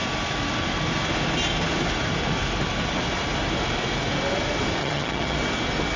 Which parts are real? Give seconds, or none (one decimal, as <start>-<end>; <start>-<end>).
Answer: 0.0-4.8; 5.4-6.0